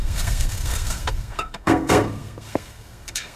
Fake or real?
fake